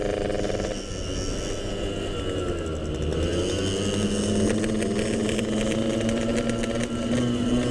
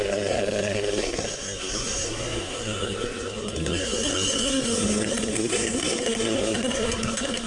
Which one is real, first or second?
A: first